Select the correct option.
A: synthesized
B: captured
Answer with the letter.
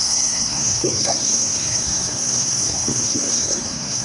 A